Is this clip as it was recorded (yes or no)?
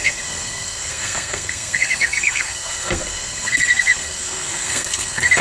no